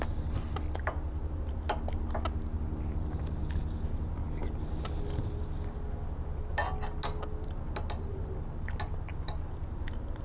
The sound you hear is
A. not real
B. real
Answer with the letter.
B